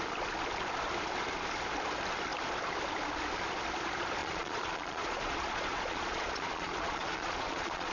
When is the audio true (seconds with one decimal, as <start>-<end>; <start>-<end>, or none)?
0.0-4.2